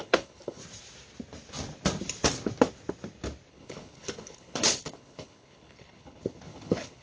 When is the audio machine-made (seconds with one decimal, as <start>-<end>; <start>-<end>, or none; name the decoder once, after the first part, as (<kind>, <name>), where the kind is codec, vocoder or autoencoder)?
0.0-0.6 (codec, HILCodec); 3.5-7.0